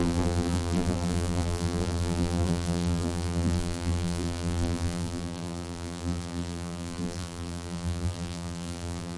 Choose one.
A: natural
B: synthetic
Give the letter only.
B